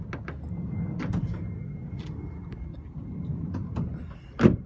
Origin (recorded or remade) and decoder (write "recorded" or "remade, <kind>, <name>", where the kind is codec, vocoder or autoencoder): recorded